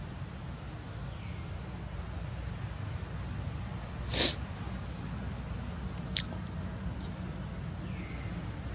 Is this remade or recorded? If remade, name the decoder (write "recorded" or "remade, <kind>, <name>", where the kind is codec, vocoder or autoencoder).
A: recorded